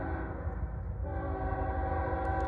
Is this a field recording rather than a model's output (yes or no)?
yes